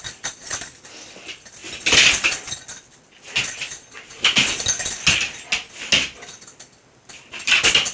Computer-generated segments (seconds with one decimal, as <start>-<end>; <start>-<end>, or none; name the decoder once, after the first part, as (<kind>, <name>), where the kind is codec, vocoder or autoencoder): none